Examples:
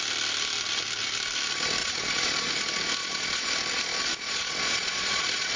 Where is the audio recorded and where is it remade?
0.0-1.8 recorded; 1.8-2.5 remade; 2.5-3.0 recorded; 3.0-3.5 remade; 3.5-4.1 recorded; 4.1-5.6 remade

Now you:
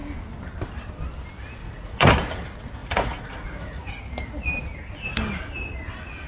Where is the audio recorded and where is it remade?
0.0-1.6 recorded; 1.6-2.1 remade; 2.1-2.8 recorded; 2.8-4.0 remade; 4.0-6.3 recorded